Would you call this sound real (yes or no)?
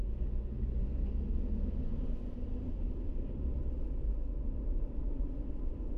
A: yes